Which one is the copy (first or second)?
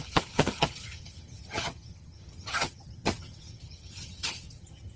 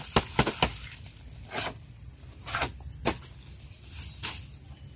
first